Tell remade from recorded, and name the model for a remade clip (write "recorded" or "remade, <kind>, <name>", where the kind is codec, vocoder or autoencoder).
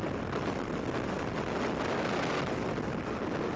recorded